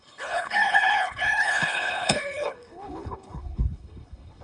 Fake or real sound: fake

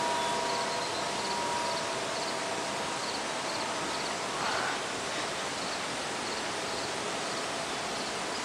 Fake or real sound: real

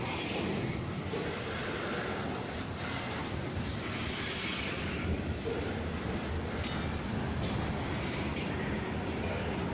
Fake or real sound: real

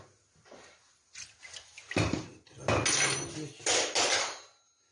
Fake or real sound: real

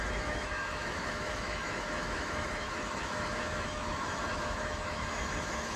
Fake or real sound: fake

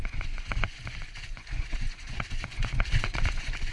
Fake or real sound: fake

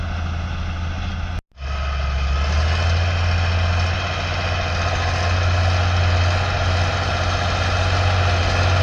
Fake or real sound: real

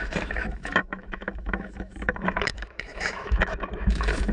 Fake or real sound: fake